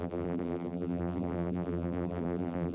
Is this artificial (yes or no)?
yes